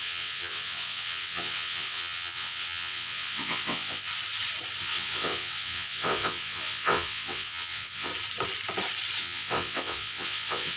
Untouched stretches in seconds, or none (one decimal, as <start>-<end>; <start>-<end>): 4.1-4.8; 8.1-9.2